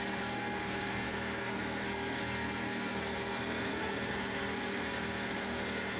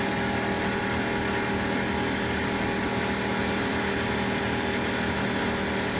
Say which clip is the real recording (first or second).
second